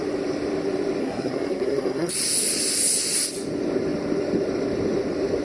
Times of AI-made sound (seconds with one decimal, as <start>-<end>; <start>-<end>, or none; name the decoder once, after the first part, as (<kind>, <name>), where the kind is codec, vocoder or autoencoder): 1.0-2.1 (codec, SNAC)